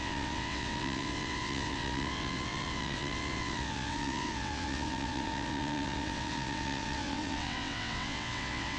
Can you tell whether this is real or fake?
fake